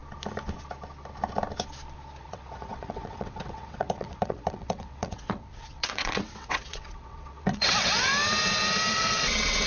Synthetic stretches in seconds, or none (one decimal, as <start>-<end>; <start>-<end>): 2.2-8.1; 8.9-9.7